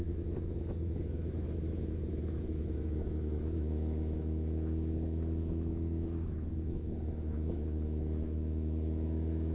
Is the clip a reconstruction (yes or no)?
yes